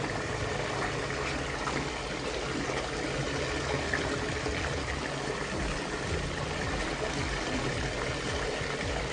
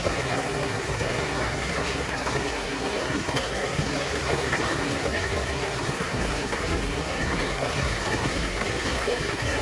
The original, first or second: first